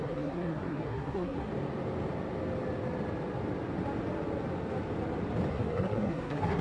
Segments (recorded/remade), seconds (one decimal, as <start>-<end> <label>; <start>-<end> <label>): 0.0-1.5 remade; 1.5-5.5 recorded; 5.5-6.6 remade